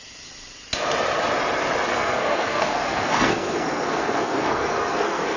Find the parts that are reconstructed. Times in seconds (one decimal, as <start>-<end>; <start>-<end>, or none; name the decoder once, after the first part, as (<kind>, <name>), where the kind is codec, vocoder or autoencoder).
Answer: 1.9-5.4 (codec, SNAC)